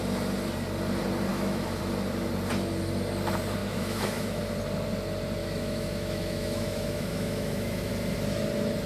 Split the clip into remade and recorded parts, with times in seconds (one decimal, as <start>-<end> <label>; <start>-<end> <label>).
0.0-1.3 recorded; 1.3-1.8 remade; 1.8-3.6 recorded; 3.6-4.4 remade; 4.4-5.4 recorded; 5.4-7.9 remade; 7.9-8.9 recorded